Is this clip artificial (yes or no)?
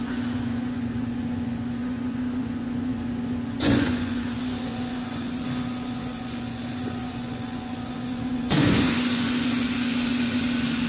yes